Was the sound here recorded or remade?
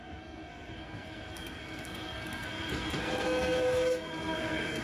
remade